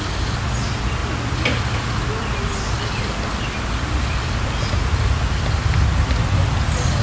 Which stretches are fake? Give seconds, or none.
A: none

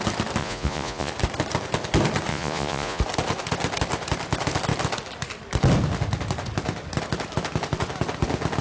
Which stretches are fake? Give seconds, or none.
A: 0.4-1.1; 2.3-3.0

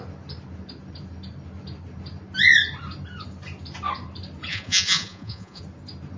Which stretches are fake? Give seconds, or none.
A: 4.5-5.6

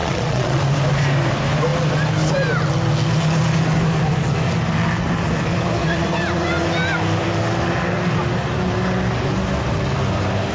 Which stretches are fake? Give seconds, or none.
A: 0.0-0.6

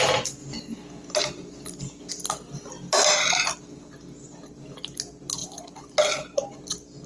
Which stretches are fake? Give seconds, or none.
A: none

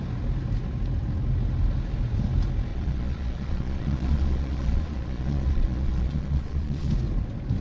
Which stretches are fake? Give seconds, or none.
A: 2.7-6.9

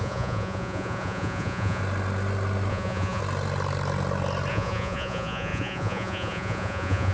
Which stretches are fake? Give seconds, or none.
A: 0.0-1.8; 2.7-3.2; 4.5-7.1

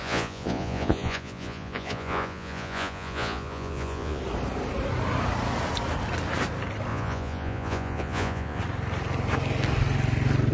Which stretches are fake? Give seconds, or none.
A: 0.0-4.2; 6.9-8.6